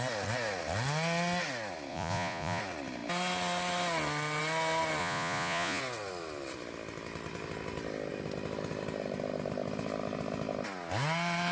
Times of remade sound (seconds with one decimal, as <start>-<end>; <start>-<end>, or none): 1.9-2.6; 5.0-5.8